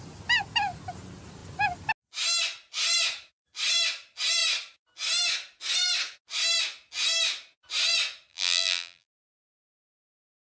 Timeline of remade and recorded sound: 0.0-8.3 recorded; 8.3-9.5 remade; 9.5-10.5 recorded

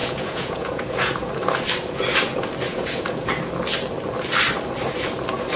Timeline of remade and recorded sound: 0.0-1.3 remade; 1.3-2.7 recorded; 2.7-3.3 remade; 3.3-5.6 recorded

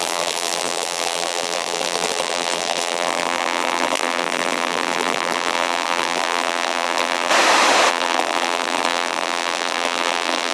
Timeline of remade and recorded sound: 0.0-7.3 remade; 7.3-7.9 recorded; 7.9-10.5 remade

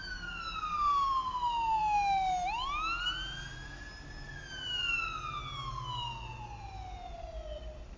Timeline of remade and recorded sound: 0.0-8.0 recorded

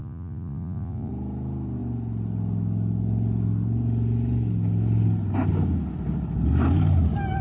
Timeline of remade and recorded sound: 0.0-1.1 remade; 1.1-7.4 recorded

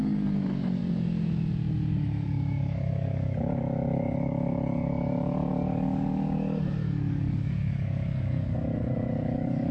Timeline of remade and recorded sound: 0.0-0.8 remade; 0.8-1.9 recorded; 1.9-9.7 remade

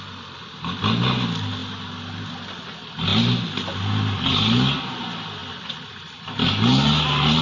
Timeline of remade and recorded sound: 0.0-7.4 recorded

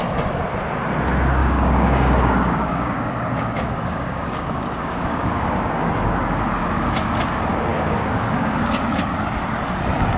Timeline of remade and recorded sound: 0.0-1.4 recorded; 1.4-5.9 remade; 5.9-7.7 recorded; 7.7-8.9 remade; 8.9-10.2 recorded